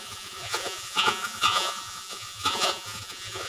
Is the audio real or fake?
fake